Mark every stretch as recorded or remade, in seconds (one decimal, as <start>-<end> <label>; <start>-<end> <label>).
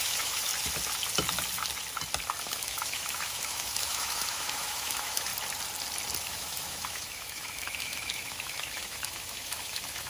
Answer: 0.0-0.5 remade; 0.5-2.4 recorded; 2.4-5.3 remade; 5.3-6.2 recorded; 6.2-10.1 remade